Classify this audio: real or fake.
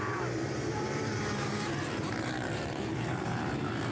fake